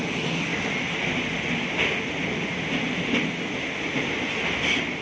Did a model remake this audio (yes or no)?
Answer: no